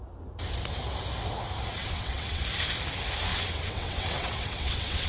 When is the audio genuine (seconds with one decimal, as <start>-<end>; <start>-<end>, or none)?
0.0-1.8; 2.4-3.3